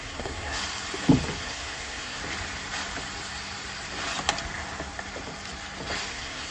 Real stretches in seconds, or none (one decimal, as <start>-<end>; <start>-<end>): 0.6-1.4; 2.2-6.1